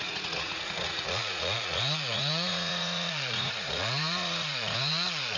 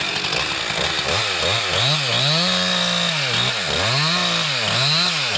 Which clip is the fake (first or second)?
first